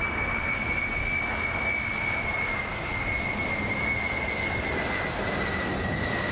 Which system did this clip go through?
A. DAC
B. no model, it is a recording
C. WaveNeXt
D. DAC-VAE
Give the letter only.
B